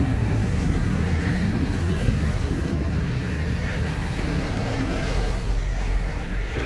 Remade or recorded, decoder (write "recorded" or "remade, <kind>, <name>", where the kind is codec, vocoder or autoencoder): remade, codec, SNAC